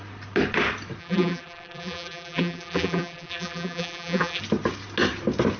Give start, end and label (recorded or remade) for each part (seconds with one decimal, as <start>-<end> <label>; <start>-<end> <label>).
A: 0.0-1.0 recorded; 1.0-4.4 remade; 4.4-5.6 recorded